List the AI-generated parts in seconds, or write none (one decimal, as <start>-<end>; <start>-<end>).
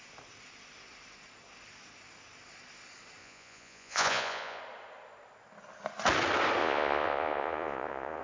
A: 3.2-4.6; 6.6-8.2